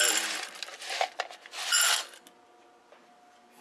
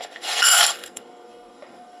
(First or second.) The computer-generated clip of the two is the second